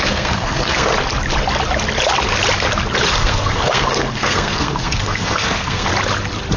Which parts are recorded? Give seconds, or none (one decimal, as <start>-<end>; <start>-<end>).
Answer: 0.9-3.1; 5.9-6.6